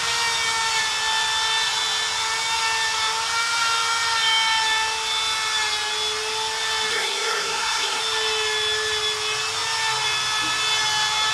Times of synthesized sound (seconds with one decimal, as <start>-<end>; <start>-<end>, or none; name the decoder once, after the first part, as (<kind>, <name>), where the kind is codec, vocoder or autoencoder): 6.9-8.0 (codec, SNAC)